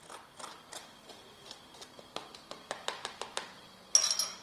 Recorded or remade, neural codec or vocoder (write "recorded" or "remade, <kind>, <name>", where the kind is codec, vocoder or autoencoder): recorded